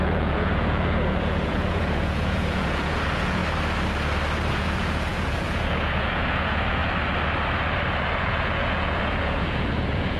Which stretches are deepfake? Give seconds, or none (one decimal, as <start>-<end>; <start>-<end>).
0.0-3.4; 4.5-6.8; 8.2-10.2